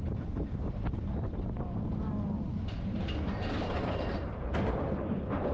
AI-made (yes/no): no